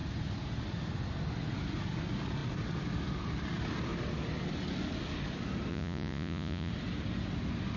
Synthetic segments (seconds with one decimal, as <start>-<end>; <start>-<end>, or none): 5.7-6.7